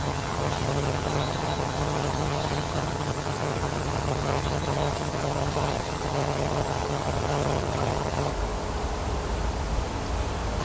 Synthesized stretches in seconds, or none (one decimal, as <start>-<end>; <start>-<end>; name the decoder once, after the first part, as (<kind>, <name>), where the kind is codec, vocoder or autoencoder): 0.0-8.3 (vocoder, HiFi-GAN)